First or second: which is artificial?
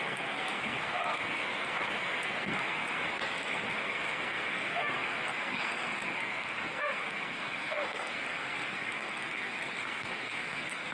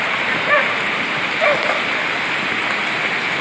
first